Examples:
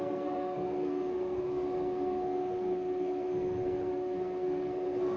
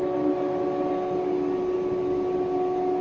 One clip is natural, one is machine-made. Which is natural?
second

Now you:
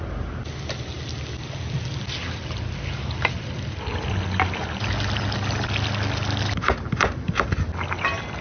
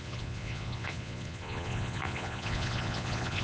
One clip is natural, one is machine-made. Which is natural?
first